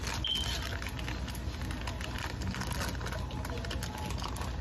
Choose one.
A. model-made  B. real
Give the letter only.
B